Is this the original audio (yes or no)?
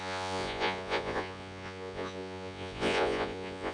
no